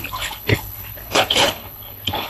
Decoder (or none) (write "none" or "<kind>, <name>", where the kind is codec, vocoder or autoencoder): codec, HILCodec